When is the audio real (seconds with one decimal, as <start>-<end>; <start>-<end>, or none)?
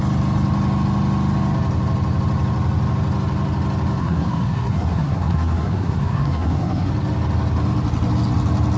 0.0-4.0; 6.9-8.8